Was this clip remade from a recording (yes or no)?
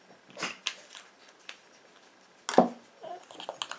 no